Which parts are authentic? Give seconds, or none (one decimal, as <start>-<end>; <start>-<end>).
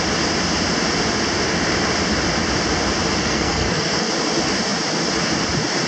0.0-3.2; 4.1-5.9